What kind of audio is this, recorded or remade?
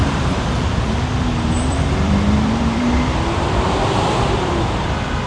remade